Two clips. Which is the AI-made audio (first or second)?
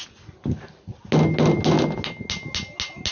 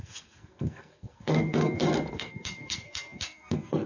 second